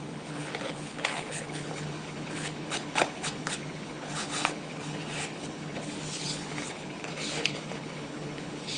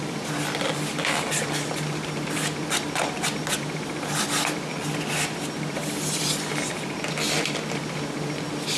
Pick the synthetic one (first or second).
first